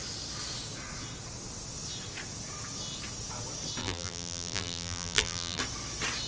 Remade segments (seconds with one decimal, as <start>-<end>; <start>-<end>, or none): 3.8-5.6